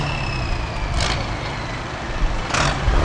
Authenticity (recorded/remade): recorded